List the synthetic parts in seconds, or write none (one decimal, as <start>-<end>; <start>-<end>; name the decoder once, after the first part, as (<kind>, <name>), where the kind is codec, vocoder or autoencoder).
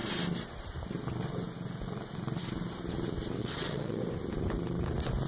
3.4-4.0 (vocoder, WaveNeXt)